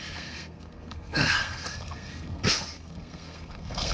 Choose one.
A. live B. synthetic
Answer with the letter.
B